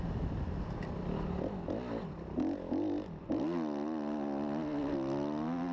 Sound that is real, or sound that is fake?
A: real